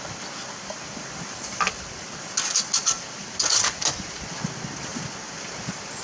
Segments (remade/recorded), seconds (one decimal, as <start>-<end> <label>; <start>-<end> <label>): 0.0-6.0 recorded